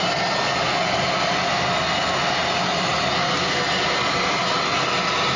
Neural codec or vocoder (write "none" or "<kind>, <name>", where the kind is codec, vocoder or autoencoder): none